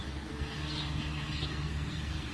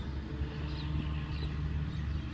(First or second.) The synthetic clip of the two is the first